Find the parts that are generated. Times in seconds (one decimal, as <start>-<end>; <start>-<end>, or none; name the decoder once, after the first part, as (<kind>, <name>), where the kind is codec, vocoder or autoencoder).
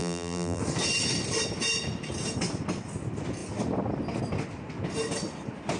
0.0-0.6 (vocoder, BigVGAN v2)